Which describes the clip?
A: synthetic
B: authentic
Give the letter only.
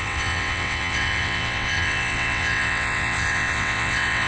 A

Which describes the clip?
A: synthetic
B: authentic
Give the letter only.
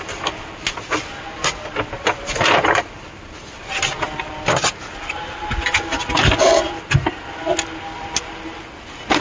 B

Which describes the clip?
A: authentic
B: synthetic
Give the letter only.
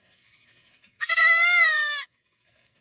B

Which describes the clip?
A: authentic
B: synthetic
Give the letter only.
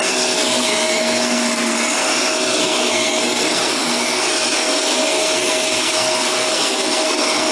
B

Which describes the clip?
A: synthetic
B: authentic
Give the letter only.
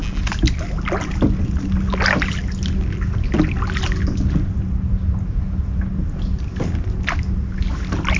B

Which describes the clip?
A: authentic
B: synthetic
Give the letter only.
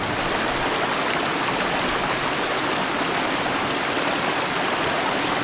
A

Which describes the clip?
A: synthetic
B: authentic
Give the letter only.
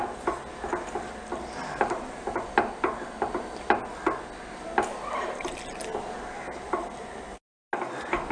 B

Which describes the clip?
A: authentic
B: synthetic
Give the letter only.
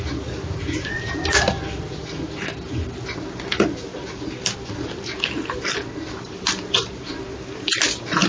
B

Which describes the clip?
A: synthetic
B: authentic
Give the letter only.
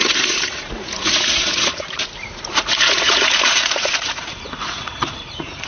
A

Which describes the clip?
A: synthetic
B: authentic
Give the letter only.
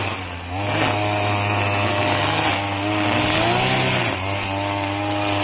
B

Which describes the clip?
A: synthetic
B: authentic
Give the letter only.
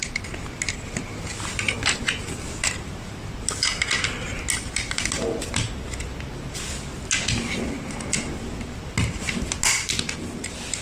B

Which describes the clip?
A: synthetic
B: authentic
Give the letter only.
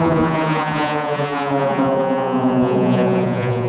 A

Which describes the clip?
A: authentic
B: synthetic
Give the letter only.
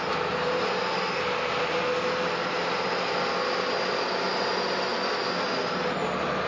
A